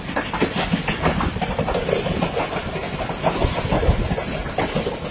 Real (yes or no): yes